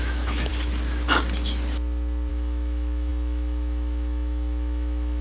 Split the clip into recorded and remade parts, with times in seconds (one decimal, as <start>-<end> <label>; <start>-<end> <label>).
0.0-0.5 remade; 0.5-2.3 recorded; 2.3-5.2 remade